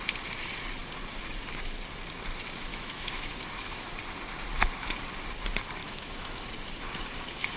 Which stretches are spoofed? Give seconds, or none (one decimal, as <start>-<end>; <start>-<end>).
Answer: 2.7-3.9; 5.8-6.4